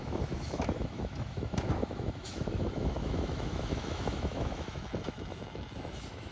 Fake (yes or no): yes